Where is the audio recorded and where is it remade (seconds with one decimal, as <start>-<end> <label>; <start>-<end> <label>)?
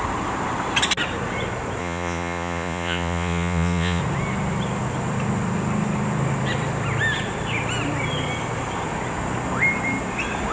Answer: 0.0-1.8 recorded; 1.8-4.0 remade; 4.0-10.5 recorded